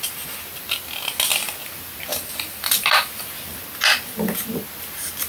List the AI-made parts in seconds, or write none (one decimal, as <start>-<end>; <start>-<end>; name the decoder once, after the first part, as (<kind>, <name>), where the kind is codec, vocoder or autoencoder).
1.6-3.1 (vocoder, BigVGAN v2)